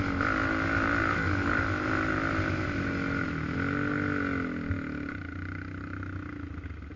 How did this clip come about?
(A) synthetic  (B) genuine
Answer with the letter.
B